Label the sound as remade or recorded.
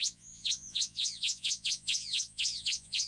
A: remade